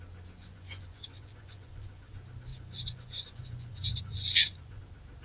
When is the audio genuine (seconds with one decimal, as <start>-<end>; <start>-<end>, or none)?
0.0-0.4; 2.1-2.5; 4.8-5.2